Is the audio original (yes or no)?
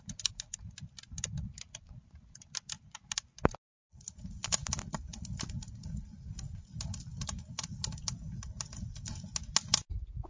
yes